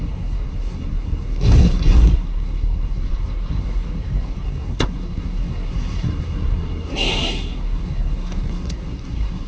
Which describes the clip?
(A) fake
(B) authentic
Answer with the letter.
A